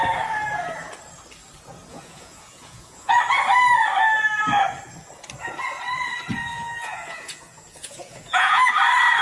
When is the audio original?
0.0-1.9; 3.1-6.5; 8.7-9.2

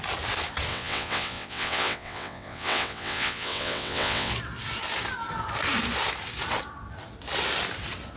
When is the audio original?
0.0-0.7; 4.3-8.2